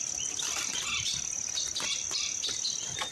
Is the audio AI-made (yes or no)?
no